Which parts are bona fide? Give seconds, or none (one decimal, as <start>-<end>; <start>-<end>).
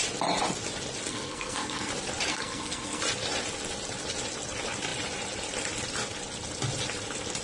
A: 0.0-1.1; 1.9-2.3; 3.0-7.4